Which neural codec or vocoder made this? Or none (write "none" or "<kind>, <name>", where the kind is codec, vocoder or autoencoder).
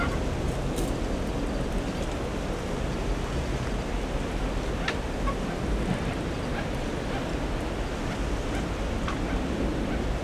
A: none